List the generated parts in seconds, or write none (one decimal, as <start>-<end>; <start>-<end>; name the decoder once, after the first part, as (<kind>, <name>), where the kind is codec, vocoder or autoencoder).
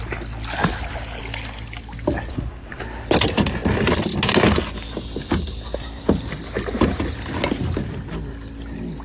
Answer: 2.3-2.8 (codec, SNAC)